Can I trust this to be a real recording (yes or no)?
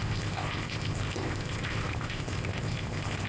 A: no